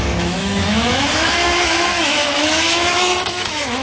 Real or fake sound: fake